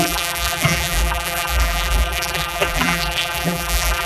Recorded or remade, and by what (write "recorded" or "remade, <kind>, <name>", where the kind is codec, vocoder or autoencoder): remade, vocoder, BigVGAN v2